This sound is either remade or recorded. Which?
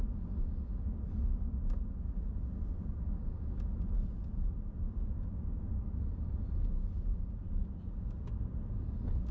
recorded